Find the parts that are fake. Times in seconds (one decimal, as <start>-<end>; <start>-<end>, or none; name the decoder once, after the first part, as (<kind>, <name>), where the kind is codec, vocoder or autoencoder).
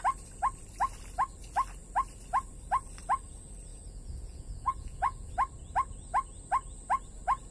3.7-5.3 (vocoder, Vocos)